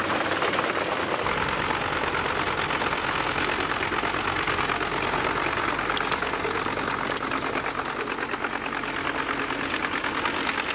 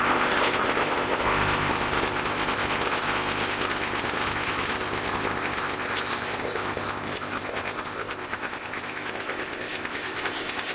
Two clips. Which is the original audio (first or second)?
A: first